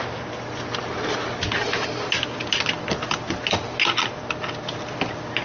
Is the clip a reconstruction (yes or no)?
no